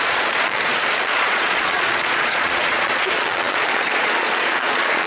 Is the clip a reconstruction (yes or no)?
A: yes